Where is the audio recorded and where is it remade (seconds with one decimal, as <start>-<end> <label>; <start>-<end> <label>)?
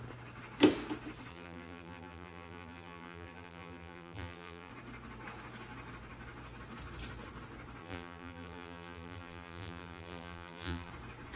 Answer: 0.0-1.3 recorded; 1.3-4.7 remade; 4.7-7.8 recorded; 7.8-10.9 remade; 10.9-11.4 recorded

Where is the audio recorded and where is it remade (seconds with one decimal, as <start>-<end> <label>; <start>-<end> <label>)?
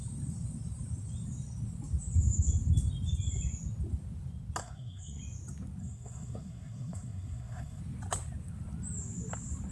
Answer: 0.0-4.6 recorded; 4.6-5.2 remade; 5.2-5.8 recorded; 5.8-7.8 remade; 7.8-9.7 recorded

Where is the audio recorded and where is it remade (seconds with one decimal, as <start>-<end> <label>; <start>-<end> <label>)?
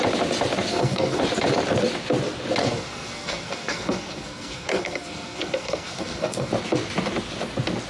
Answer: 0.0-0.7 recorded; 0.7-1.2 remade; 1.2-2.6 recorded; 2.6-6.5 remade; 6.5-7.9 recorded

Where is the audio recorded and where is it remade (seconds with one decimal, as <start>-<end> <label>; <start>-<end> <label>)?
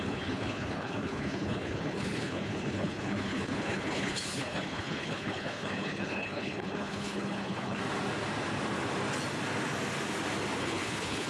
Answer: 0.0-7.8 remade; 7.8-10.6 recorded; 10.6-11.3 remade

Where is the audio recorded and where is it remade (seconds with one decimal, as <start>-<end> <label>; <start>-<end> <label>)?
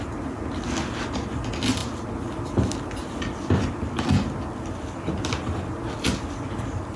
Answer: 0.0-7.0 recorded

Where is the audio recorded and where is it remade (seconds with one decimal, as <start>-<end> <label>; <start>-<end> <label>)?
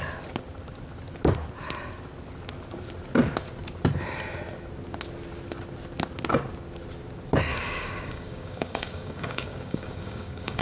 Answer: 0.0-7.5 recorded; 7.5-10.6 remade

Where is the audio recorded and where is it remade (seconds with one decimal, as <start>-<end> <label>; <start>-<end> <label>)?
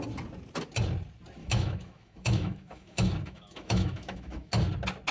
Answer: 0.0-1.4 recorded; 1.4-4.5 remade; 4.5-5.1 recorded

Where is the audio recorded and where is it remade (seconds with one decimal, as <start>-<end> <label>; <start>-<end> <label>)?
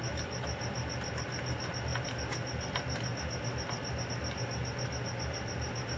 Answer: 0.0-6.0 recorded